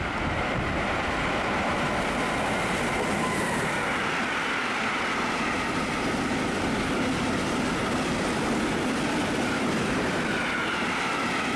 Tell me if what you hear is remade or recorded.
recorded